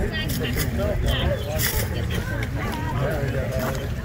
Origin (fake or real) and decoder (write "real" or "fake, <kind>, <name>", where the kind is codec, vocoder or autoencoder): fake, vocoder, BigVGAN v2